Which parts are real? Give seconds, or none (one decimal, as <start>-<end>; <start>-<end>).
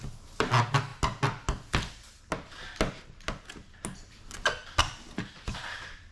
0.0-6.1